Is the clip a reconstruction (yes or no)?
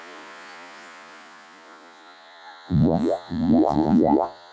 yes